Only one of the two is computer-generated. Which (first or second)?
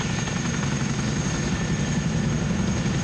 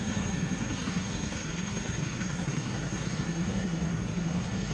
second